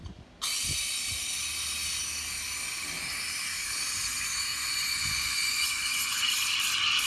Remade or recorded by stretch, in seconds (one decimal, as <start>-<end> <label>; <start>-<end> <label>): 0.0-4.5 recorded; 4.5-6.2 remade; 6.2-7.1 recorded